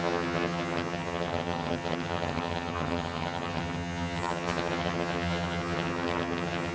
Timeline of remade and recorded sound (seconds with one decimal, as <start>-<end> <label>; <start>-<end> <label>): 0.0-6.7 remade